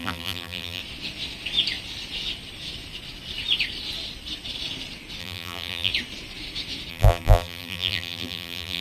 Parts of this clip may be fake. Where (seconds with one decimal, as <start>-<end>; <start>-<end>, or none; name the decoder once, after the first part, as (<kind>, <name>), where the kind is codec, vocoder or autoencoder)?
0.0-0.8 (vocoder, BigVGAN v2); 5.2-5.9; 6.9-8.8